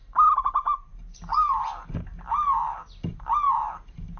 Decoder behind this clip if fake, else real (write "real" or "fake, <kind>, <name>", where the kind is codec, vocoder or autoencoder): real